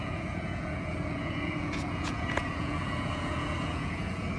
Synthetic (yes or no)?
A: yes